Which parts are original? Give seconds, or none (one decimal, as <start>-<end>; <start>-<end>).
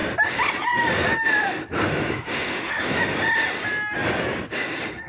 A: 0.0-1.8; 3.0-5.1